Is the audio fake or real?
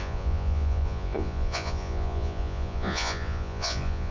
fake